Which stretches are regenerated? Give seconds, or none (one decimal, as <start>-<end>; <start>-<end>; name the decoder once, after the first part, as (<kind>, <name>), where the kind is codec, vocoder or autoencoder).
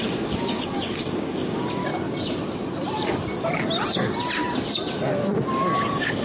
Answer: 0.0-1.8 (codec, DAC); 5.5-6.2